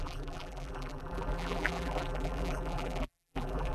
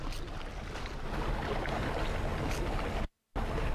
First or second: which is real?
second